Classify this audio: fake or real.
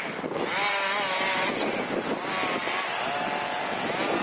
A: real